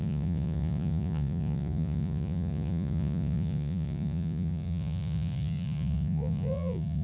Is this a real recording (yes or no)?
no